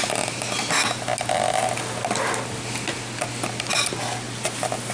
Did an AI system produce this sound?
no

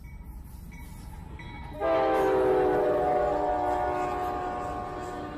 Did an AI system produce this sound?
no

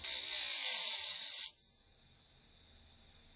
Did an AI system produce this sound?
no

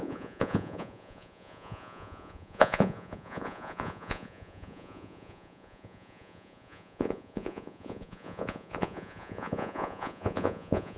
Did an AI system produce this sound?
yes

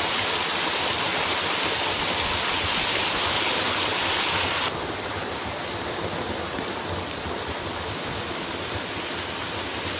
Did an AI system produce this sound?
no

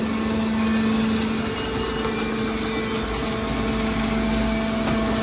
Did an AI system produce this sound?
no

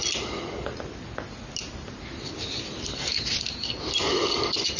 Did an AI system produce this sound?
no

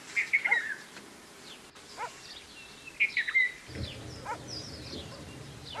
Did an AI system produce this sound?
no